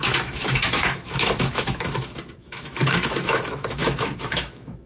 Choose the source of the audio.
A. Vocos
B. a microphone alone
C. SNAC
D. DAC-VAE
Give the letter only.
D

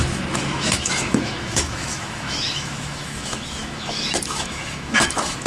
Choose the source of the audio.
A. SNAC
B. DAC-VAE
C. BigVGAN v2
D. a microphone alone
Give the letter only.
B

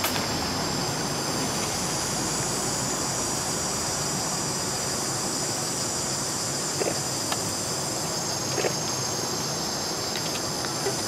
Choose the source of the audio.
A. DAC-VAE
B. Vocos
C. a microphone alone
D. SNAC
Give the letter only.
C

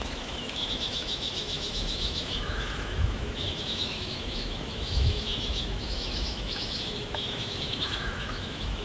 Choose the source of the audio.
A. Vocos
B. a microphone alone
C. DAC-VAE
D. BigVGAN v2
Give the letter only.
C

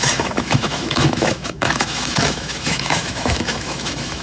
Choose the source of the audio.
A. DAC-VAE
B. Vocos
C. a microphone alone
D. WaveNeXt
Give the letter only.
A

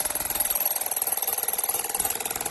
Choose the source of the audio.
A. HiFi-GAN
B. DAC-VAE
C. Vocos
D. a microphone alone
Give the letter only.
D